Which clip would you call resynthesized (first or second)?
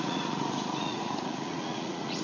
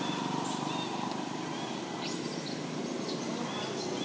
first